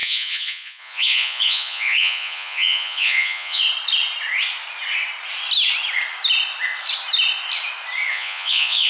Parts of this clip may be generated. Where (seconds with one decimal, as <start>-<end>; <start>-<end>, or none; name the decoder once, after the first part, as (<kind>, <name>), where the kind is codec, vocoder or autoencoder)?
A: 0.0-3.6 (vocoder, Vocos); 8.1-8.9